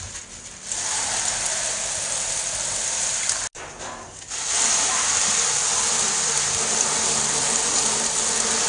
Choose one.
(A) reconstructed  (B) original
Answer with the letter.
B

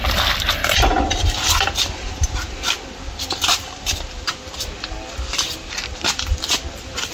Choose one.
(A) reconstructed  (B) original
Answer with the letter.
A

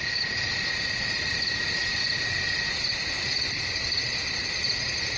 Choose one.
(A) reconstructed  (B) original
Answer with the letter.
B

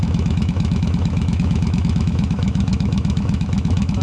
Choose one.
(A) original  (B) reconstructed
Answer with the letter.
B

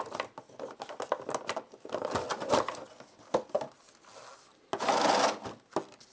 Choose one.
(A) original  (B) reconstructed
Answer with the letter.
A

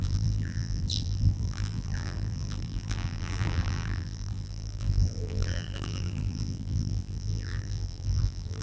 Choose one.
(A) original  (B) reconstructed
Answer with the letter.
B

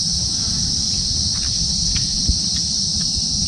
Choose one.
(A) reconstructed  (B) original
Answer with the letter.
A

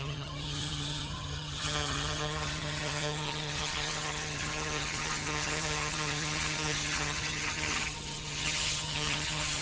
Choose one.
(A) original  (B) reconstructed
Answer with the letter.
B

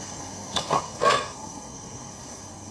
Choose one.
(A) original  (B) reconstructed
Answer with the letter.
B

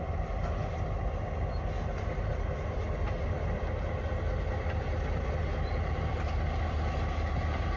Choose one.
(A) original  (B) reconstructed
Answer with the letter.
A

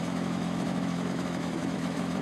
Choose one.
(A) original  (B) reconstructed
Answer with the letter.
B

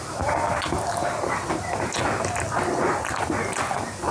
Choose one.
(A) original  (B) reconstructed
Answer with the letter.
A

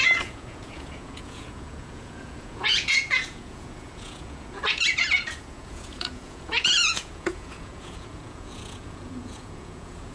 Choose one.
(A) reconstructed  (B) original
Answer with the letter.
A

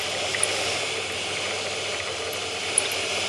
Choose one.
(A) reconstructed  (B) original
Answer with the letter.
B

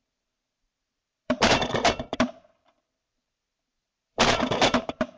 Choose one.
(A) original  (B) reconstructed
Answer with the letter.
B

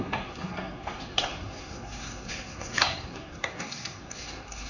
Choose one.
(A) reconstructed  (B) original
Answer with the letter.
A